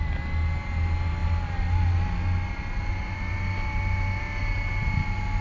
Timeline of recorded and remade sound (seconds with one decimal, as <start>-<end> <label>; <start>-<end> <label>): 0.0-5.4 recorded